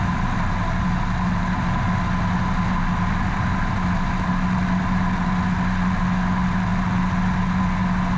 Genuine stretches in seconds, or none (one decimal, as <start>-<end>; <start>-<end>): 0.0-8.2